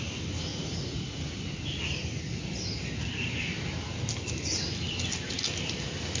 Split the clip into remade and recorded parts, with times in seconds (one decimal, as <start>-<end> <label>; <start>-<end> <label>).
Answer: 0.0-0.5 recorded; 0.5-1.2 remade; 1.2-6.2 recorded